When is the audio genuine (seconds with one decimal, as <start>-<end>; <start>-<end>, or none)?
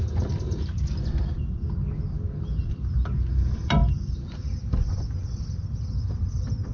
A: 0.0-6.7